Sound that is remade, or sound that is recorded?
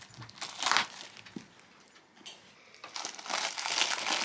recorded